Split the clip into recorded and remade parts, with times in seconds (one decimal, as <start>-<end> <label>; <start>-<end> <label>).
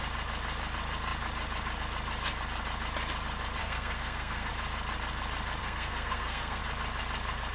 0.0-3.6 recorded; 3.6-4.5 remade; 4.5-5.6 recorded; 5.6-6.6 remade; 6.6-7.5 recorded